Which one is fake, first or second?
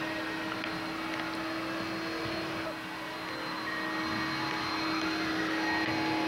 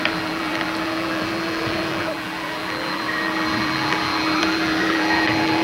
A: second